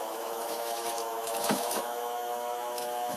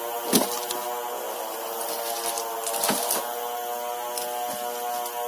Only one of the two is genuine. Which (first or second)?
second